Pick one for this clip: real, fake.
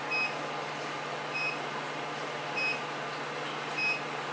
real